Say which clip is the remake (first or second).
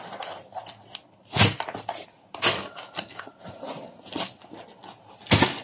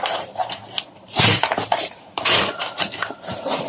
second